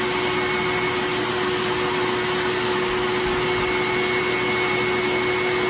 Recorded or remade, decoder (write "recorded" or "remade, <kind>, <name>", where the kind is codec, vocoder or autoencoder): recorded